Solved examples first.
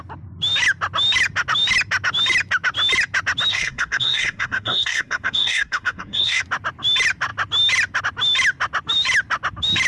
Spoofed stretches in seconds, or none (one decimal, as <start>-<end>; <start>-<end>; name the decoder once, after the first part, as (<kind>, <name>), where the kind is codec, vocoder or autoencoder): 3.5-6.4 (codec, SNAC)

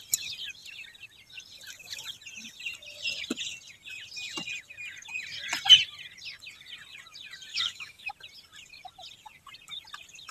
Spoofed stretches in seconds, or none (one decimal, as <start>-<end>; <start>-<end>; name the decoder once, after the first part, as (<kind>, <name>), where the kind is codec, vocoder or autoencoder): 7.5-8.1 (autoencoder, DAC-VAE)

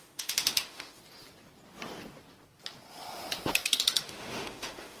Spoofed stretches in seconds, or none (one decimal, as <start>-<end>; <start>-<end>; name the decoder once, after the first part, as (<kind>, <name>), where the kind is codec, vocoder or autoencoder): 0.0-1.0 (autoencoder, DAC-VAE); 4.0-5.0

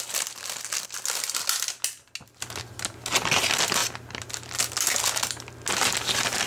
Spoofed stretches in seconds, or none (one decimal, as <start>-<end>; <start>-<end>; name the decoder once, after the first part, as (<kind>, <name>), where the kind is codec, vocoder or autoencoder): none

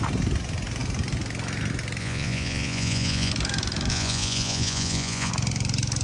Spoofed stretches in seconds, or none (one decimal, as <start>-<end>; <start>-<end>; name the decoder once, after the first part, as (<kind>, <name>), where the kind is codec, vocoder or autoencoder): 2.0-3.3 (vocoder, Vocos); 3.9-5.3